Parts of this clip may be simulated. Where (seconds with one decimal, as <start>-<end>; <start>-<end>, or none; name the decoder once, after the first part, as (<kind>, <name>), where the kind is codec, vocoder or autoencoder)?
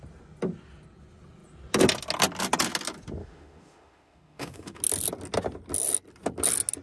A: 3.2-4.8 (autoencoder, DAC-VAE)